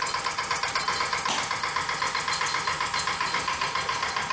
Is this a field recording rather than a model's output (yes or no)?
yes